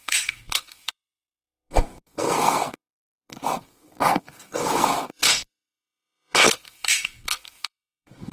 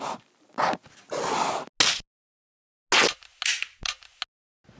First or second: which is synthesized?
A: first